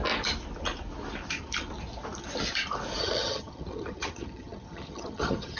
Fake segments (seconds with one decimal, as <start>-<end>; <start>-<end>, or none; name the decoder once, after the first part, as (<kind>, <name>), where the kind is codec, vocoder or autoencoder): 3.0-5.6 (vocoder, HiFi-GAN)